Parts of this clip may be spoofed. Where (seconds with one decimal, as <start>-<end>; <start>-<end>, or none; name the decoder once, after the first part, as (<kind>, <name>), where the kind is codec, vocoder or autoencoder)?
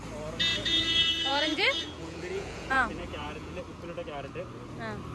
0.5-3.6 (vocoder, Vocos)